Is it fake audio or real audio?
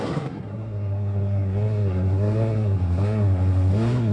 fake